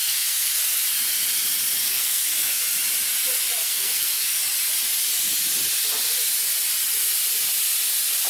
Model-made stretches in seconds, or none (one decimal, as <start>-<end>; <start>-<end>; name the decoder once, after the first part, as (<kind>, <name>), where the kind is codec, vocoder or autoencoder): 0.0-0.6 (codec, SNAC); 1.8-2.6; 3.6-4.4